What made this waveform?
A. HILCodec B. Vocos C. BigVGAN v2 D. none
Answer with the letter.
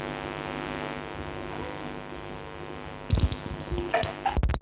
D